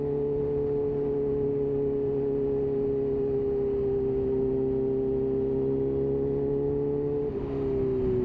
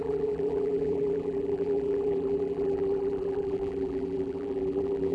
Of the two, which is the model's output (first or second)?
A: second